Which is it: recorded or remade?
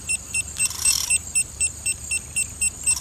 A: remade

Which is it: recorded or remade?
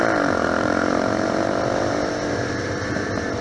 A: remade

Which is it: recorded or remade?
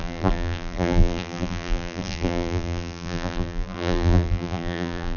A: remade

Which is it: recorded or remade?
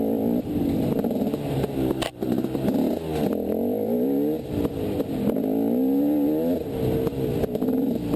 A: recorded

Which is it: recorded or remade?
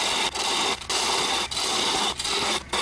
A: recorded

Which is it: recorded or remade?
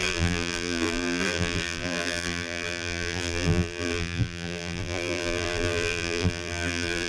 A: remade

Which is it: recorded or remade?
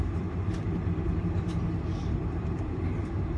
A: remade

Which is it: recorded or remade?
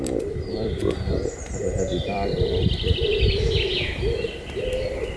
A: remade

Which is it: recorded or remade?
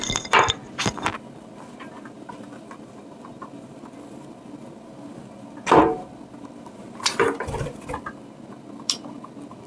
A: remade